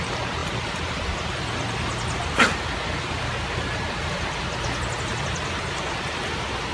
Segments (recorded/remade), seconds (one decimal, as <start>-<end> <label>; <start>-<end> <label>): 0.0-6.7 recorded

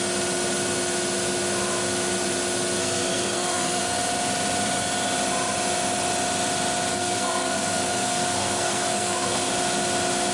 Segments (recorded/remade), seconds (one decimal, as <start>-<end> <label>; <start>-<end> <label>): 0.0-2.8 recorded; 2.8-3.8 remade; 3.8-6.9 recorded; 6.9-9.5 remade; 9.5-10.3 recorded

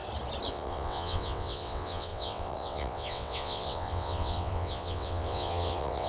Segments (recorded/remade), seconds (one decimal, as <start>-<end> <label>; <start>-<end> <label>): 0.0-0.5 recorded; 0.5-6.1 remade

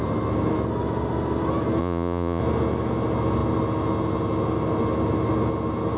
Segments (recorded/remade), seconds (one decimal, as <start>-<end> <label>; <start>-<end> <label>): 0.0-1.8 recorded; 1.8-2.4 remade; 2.4-6.0 recorded